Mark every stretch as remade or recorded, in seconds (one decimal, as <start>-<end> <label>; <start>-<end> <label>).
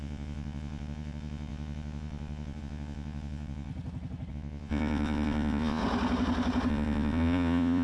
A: 0.0-3.7 remade; 3.7-4.3 recorded; 4.3-5.8 remade; 5.8-6.7 recorded; 6.7-7.8 remade